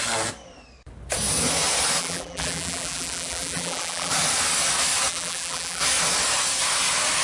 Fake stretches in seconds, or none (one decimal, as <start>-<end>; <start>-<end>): 2.0-4.1; 5.1-5.8